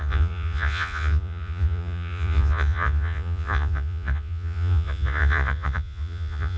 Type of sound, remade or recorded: remade